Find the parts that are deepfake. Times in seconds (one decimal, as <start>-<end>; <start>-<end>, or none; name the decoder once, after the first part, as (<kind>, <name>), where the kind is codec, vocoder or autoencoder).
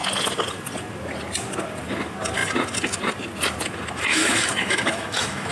4.1-5.5 (autoencoder, DAC-VAE)